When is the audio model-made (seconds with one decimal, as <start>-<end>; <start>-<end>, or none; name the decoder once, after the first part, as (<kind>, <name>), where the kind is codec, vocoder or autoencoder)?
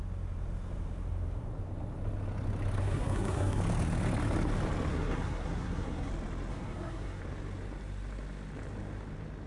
2.8-3.6 (codec, SNAC); 4.9-6.1; 6.5-7.2